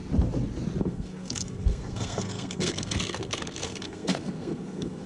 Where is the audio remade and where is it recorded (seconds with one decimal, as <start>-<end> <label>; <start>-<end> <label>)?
0.0-0.8 recorded; 0.8-5.1 remade

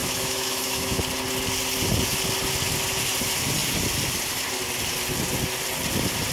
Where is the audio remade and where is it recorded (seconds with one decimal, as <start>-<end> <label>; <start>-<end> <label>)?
0.0-1.0 remade; 1.0-6.3 recorded

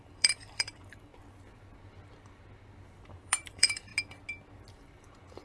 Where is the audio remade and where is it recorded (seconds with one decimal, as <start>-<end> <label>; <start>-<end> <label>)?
0.0-1.1 remade; 1.1-2.9 recorded; 2.9-3.9 remade; 3.9-4.7 recorded; 4.7-5.4 remade

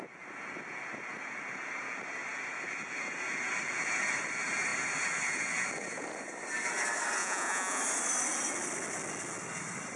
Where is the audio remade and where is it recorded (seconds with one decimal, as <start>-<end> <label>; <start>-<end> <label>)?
0.0-7.2 recorded; 7.2-7.8 remade; 7.8-10.0 recorded

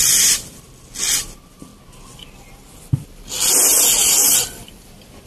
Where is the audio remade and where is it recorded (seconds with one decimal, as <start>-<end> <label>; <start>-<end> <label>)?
0.0-1.7 remade; 1.7-4.0 recorded; 4.0-5.3 remade

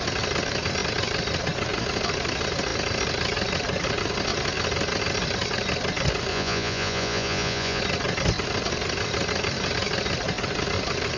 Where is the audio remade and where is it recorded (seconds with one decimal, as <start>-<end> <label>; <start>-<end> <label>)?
0.0-6.3 recorded; 6.3-7.8 remade; 7.8-11.2 recorded

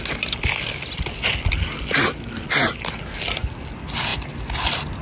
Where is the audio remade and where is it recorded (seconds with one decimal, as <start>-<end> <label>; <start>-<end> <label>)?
0.0-5.0 recorded